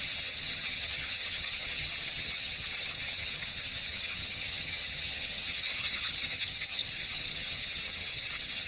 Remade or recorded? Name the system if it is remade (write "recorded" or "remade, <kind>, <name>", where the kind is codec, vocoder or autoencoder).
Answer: remade, vocoder, HiFi-GAN